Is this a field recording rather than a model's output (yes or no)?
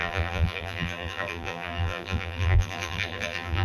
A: no